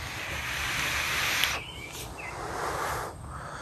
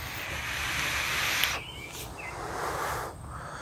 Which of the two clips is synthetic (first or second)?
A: first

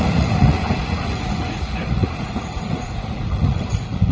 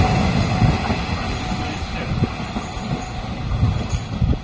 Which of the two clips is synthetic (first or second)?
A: first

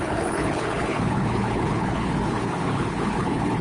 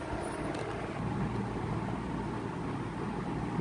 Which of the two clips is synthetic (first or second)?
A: first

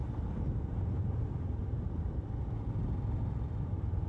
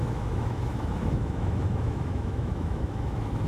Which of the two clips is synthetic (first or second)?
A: second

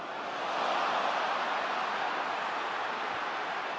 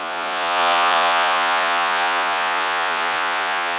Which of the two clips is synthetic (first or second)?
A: second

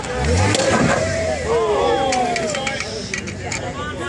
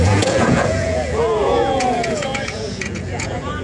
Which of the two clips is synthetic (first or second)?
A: second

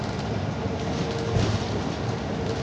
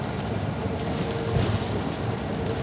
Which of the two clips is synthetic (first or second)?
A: second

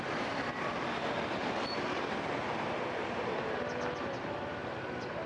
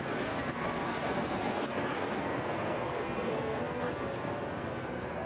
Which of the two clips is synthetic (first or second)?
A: second